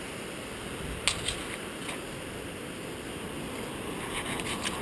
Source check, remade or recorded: recorded